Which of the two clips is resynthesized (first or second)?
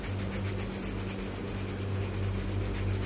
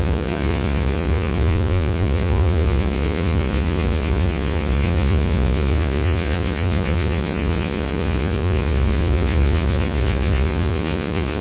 second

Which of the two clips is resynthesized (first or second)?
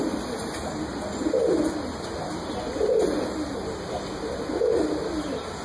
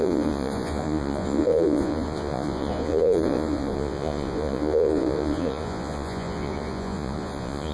second